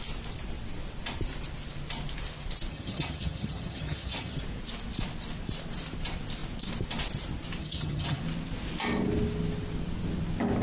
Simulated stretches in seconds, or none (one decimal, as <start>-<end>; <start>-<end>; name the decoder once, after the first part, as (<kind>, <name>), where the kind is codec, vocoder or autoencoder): 2.7-4.4 (vocoder, HiFi-GAN); 7.6-8.2